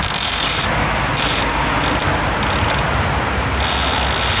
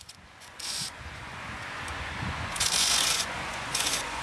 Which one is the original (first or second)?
first